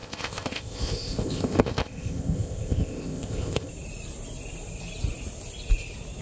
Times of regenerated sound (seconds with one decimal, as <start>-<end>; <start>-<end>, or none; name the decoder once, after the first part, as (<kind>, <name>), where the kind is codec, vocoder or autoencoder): 0.0-3.7 (codec, ZipCodec)